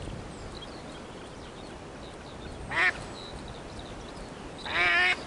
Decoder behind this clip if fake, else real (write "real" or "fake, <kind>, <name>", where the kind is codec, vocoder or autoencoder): real